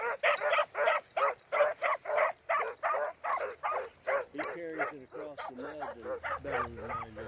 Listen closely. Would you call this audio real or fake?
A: real